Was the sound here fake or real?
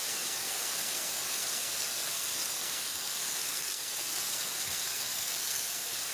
fake